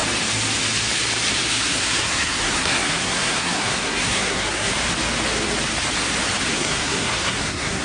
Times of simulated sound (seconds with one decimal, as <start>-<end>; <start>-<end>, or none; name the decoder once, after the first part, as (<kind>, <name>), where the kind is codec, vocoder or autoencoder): 1.5-4.7 (codec, SNAC); 6.5-7.8